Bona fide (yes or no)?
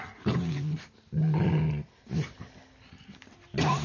yes